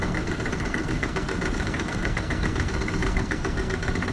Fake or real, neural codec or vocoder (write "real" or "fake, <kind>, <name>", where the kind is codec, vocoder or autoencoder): fake, codec, SNAC